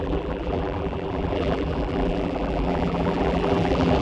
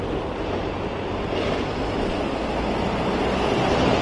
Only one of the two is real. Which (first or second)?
second